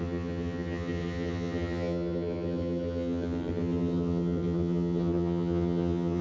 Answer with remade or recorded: remade